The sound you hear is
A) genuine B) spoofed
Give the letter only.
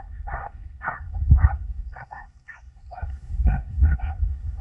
B